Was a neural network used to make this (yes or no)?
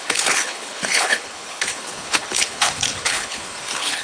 yes